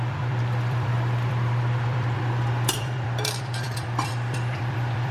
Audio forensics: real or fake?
fake